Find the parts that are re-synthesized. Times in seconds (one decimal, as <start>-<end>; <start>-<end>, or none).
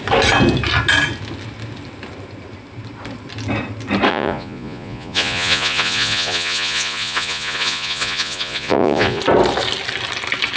4.1-9.2